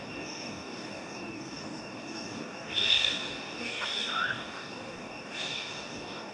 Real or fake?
fake